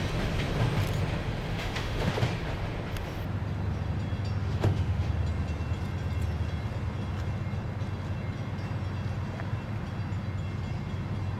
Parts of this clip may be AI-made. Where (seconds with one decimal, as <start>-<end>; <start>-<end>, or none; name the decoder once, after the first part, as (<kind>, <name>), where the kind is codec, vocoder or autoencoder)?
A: 1.5-2.1 (autoencoder, DAC-VAE); 4.4-5.1